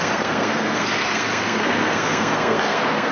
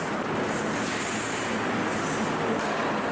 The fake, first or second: first